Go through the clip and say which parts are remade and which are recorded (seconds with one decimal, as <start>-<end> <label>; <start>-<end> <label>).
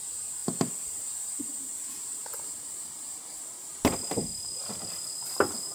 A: 0.0-5.7 recorded